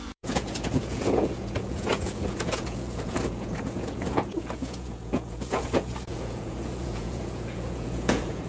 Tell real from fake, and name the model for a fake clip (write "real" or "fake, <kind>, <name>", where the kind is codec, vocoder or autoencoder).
fake, vocoder, Vocos